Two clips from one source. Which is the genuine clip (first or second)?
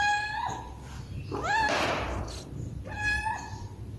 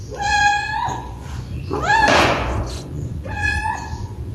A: first